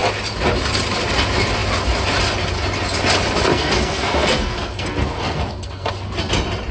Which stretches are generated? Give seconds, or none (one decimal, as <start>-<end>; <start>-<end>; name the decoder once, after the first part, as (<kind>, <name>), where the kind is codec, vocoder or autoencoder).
3.5-5.9 (codec, SNAC)